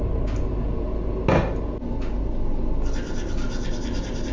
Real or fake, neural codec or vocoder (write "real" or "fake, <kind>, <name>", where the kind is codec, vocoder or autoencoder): real